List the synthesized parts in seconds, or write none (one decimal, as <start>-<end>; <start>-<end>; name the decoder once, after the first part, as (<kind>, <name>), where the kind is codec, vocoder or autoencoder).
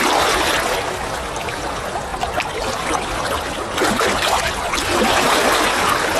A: none